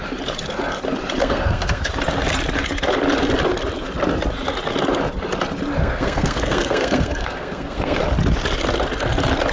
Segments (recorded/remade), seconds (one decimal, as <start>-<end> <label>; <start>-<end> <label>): 0.0-1.2 recorded; 1.2-1.9 remade; 1.9-5.8 recorded; 5.8-8.0 remade; 8.0-9.5 recorded